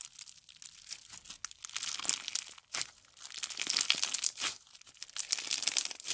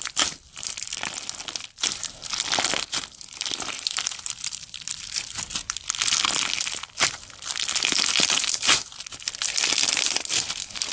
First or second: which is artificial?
second